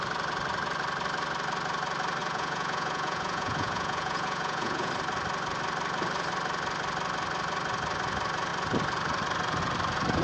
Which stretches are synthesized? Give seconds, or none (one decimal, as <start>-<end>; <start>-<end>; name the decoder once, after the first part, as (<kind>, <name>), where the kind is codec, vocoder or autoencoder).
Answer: 2.2-4.9 (vocoder, Vocos)